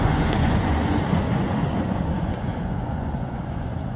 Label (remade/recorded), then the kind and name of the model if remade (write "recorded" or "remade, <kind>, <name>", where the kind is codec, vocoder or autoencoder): remade, vocoder, Vocos